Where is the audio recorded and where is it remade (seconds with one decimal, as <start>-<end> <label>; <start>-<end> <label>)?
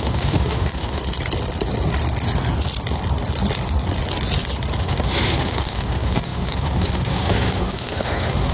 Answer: 0.0-1.0 remade; 1.0-4.8 recorded; 4.8-8.5 remade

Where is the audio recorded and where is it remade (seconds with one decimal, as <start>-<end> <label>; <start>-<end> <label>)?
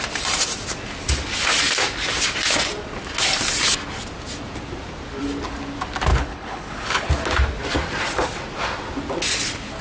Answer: 0.0-6.1 recorded; 6.1-7.1 remade; 7.1-9.8 recorded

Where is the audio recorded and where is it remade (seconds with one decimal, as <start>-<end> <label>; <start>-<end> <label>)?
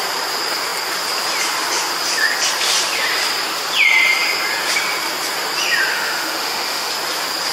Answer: 0.0-5.9 recorded; 5.9-6.9 remade; 6.9-7.5 recorded